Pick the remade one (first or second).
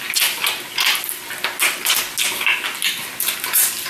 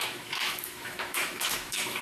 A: second